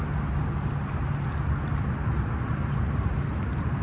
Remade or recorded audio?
recorded